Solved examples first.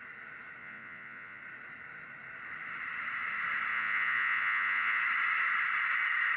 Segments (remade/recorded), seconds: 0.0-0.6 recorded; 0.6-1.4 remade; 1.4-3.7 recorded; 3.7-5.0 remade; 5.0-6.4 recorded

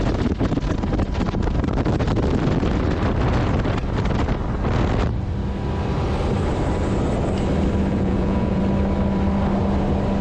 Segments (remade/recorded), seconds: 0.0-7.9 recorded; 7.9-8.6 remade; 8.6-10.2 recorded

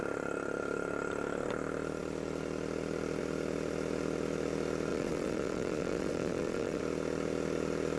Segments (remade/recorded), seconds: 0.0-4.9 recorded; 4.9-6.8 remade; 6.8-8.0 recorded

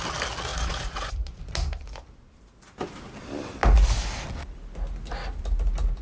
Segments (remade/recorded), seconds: 0.0-0.5 recorded; 0.5-1.4 remade; 1.4-6.0 recorded

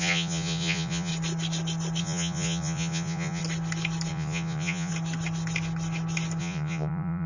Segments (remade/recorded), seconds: 0.0-1.1 remade; 1.1-2.0 recorded; 2.0-3.4 remade; 3.4-4.1 recorded; 4.1-4.9 remade; 4.9-6.4 recorded; 6.4-7.3 remade

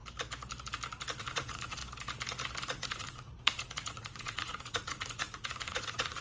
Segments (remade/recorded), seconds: 0.0-1.2 recorded; 1.2-1.8 remade; 1.8-2.7 recorded; 2.7-6.2 remade

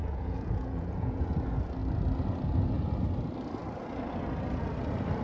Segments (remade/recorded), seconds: 0.0-1.3 remade; 1.3-5.2 recorded